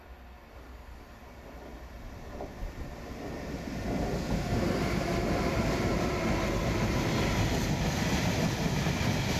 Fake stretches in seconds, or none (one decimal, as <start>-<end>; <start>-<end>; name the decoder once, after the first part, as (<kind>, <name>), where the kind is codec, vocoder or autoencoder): none